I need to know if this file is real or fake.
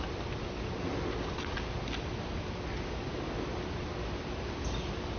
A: real